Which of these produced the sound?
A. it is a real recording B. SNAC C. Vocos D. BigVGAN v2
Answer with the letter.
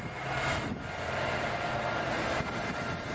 A